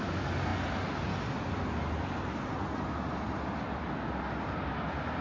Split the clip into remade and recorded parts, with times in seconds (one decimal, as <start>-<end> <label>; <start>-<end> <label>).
0.0-5.2 recorded